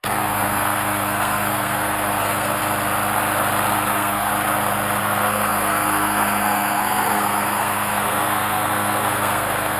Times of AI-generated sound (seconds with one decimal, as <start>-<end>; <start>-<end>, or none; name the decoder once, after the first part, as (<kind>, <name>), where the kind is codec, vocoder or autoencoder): 0.0-2.6 (codec, SNAC); 3.9-4.3; 5.0-9.8